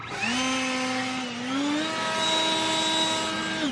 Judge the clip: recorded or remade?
recorded